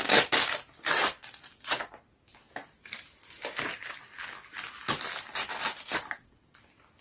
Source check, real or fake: real